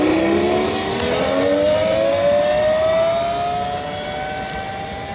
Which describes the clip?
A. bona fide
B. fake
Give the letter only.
A